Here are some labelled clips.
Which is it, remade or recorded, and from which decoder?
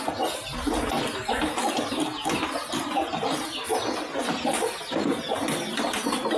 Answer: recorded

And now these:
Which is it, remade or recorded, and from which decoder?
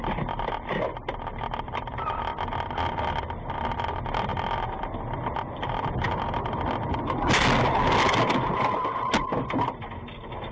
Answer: recorded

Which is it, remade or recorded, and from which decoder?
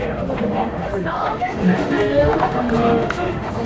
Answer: remade, autoencoder, DAC-VAE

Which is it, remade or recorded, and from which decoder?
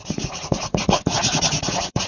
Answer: remade, vocoder, Vocos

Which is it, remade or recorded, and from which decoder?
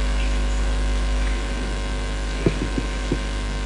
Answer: remade, autoencoder, DAC-VAE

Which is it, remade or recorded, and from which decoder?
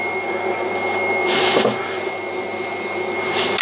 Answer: recorded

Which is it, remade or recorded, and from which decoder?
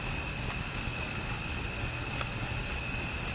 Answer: recorded